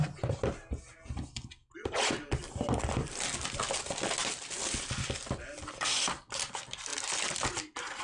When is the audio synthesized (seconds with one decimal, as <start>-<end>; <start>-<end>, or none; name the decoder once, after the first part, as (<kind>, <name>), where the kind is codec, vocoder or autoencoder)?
none